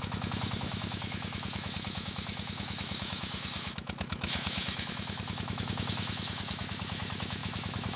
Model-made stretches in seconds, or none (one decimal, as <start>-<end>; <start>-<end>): 0.0-8.0